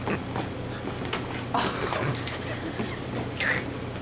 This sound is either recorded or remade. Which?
recorded